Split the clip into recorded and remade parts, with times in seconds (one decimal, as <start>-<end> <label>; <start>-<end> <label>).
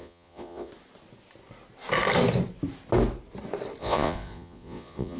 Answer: 0.0-0.7 remade; 0.7-3.8 recorded; 3.8-5.2 remade